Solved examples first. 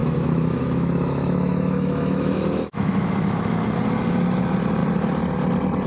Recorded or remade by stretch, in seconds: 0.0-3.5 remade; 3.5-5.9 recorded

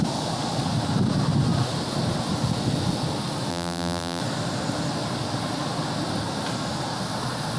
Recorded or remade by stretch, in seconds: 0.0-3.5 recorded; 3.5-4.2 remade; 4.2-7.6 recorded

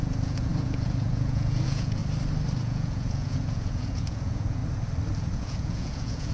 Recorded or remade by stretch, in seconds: 0.0-2.0 remade; 2.0-2.6 recorded; 2.6-4.6 remade; 4.6-5.3 recorded; 5.3-6.3 remade